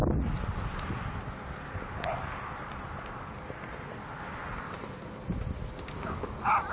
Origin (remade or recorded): recorded